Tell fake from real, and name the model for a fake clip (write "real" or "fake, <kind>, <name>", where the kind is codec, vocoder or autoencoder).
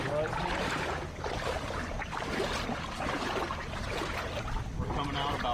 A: real